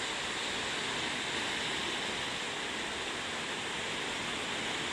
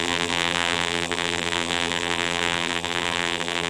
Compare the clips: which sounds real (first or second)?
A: first